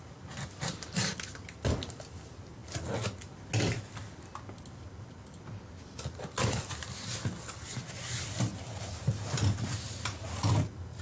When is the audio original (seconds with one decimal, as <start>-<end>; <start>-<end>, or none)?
0.0-11.0